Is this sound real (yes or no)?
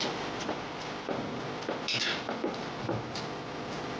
yes